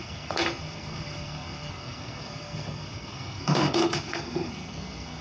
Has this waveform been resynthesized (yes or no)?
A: yes